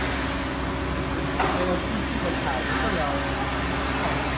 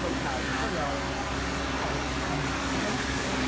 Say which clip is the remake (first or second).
second